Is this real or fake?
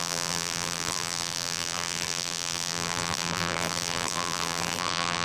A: fake